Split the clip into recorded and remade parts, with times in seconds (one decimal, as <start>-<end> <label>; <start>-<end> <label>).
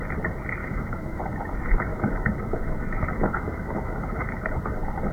0.0-0.6 recorded; 0.6-1.2 remade; 1.2-1.9 recorded; 1.9-4.6 remade; 4.6-5.1 recorded